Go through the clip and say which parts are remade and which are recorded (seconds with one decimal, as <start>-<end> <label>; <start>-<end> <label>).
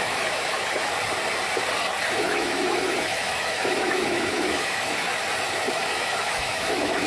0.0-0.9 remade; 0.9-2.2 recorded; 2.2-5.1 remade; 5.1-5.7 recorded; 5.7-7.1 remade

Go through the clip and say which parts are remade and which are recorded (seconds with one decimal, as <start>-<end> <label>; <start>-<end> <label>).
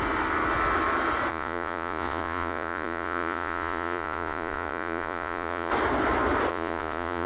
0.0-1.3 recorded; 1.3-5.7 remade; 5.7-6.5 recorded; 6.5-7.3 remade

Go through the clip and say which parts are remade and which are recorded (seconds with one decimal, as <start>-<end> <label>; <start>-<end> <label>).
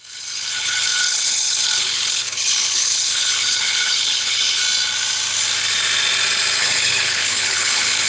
0.0-4.6 remade; 4.6-6.6 recorded; 6.6-8.1 remade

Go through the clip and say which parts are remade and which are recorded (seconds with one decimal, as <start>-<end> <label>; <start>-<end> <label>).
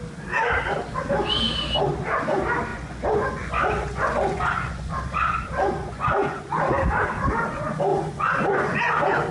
0.0-2.7 recorded; 2.7-4.9 remade; 4.9-5.8 recorded; 5.8-6.6 remade; 6.6-7.9 recorded; 7.9-8.9 remade; 8.9-9.3 recorded